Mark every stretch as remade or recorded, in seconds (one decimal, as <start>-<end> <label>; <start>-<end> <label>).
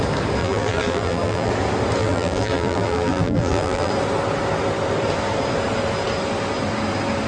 0.0-0.4 recorded; 0.4-1.5 remade; 1.5-2.0 recorded; 2.0-3.9 remade; 3.9-7.3 recorded